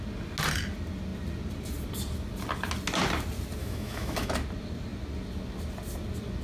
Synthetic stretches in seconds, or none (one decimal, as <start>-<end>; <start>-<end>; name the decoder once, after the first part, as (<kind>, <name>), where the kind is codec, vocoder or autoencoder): 3.6-4.3 (autoencoder, DAC-VAE)